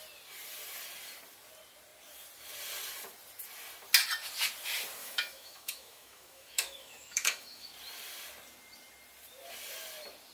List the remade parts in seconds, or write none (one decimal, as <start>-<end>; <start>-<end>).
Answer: 5.0-7.7